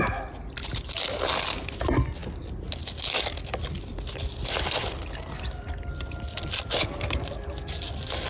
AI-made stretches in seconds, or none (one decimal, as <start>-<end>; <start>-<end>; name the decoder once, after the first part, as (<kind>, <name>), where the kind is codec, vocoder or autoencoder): none